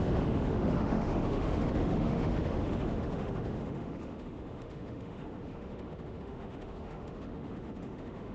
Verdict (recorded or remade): remade